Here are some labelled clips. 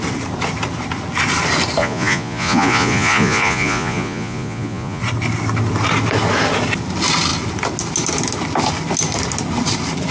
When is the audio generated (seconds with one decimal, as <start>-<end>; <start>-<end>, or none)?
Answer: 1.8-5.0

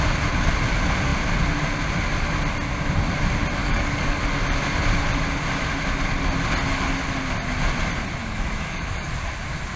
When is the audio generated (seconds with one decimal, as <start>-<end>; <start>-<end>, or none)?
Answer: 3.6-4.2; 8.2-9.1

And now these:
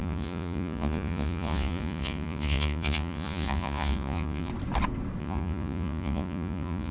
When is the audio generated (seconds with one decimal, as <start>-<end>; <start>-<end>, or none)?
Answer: 0.0-4.5; 5.2-6.9

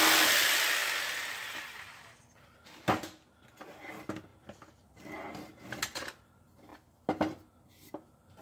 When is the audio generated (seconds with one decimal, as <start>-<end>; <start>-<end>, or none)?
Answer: none

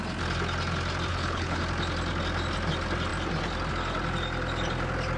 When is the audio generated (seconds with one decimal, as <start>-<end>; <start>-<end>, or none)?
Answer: 1.1-1.6

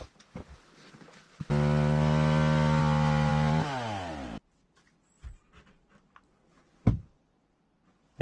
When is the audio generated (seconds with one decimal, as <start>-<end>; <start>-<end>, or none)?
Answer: 0.0-1.5; 2.8-8.2

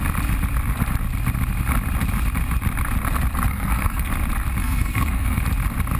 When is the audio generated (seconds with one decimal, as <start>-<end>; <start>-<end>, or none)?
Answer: 3.5-4.1; 4.6-5.4